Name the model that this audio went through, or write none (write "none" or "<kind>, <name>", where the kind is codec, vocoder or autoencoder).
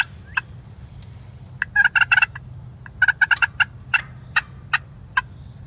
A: none